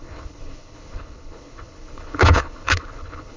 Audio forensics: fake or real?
fake